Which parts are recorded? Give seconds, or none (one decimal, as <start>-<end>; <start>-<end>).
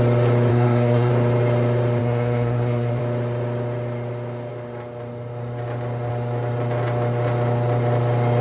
0.0-0.5; 1.1-2.0; 3.0-8.4